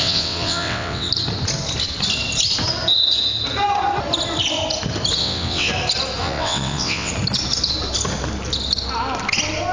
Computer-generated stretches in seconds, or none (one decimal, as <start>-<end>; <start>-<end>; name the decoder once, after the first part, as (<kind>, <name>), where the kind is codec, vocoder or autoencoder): 0.0-1.1 (vocoder, WaveNeXt); 5.2-5.7; 6.2-7.1